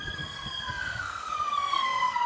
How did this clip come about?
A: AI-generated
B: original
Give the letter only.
A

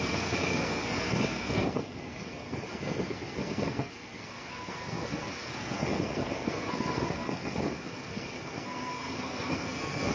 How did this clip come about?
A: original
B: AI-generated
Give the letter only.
B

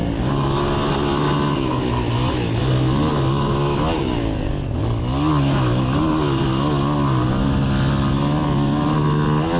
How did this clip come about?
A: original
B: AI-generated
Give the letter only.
A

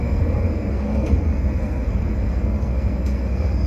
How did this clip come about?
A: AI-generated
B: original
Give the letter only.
A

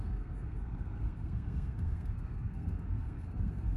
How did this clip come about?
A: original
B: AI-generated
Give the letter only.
B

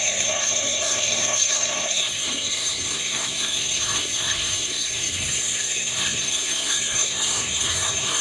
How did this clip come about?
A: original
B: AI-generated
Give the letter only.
B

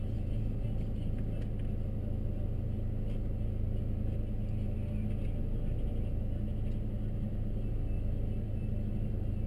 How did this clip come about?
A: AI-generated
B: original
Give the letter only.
B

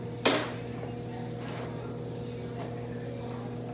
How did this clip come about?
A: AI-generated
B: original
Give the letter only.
B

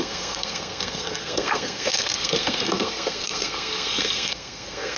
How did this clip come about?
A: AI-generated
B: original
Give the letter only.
A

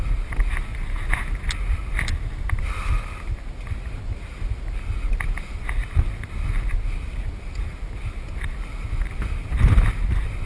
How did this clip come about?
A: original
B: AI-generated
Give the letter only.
A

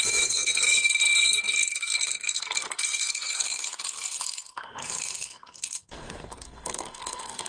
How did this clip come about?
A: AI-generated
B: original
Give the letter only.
A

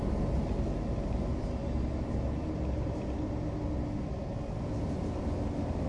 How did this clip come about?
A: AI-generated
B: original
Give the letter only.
B